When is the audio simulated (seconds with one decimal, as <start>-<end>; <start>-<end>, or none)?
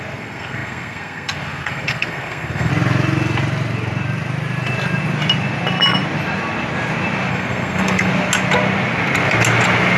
0.0-2.7; 7.3-8.1